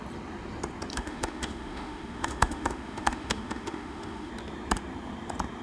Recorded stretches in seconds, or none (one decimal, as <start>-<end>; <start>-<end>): 0.0-0.9; 4.3-5.6